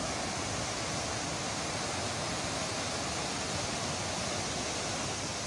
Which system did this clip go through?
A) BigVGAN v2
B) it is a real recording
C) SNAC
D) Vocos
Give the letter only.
B